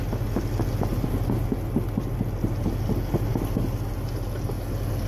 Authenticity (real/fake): real